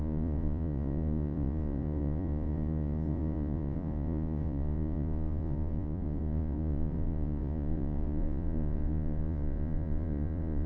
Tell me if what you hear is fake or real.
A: fake